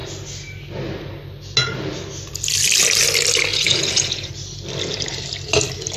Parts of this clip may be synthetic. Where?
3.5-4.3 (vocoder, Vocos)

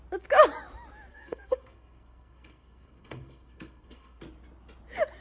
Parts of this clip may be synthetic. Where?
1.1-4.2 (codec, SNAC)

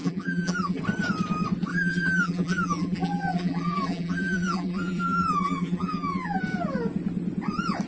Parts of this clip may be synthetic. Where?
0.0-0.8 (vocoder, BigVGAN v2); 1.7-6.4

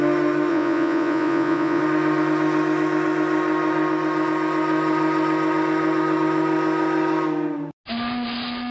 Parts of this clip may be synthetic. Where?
0.5-1.8 (vocoder, Vocos)

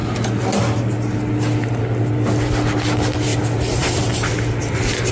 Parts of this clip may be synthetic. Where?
none

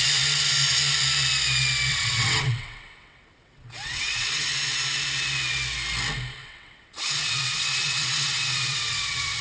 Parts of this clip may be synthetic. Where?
1.9-4.5 (vocoder, WaveNeXt); 6.4-9.4

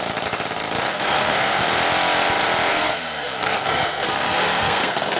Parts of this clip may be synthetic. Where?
0.9-1.6 (codec, SNAC); 2.7-5.2